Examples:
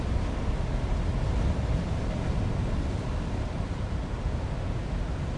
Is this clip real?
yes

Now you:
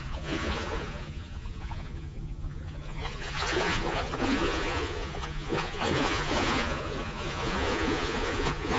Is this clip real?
no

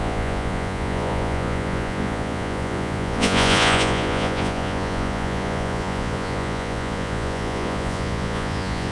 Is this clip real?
no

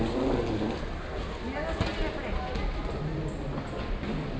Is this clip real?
yes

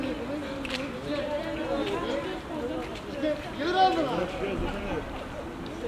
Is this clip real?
yes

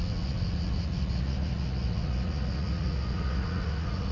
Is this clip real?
no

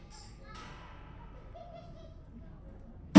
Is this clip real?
yes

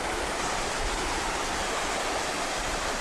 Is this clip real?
yes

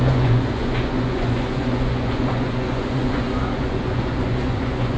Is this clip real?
no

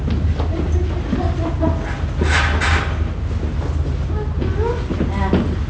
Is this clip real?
yes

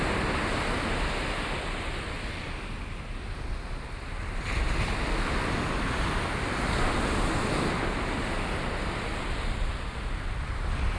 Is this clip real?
yes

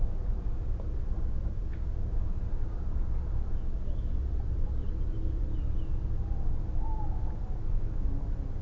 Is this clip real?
yes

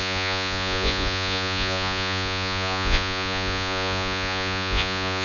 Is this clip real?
no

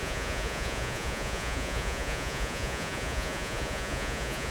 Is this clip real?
no